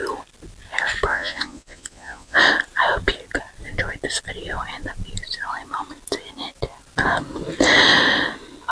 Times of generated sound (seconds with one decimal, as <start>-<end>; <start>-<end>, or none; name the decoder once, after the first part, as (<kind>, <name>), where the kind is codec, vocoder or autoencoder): 1.1-2.4 (vocoder, Vocos)